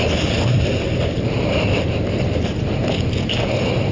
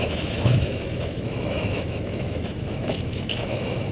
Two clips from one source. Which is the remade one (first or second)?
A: second